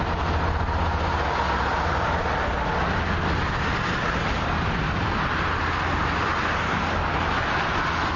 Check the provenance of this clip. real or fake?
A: real